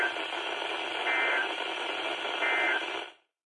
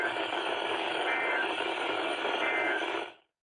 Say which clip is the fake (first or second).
second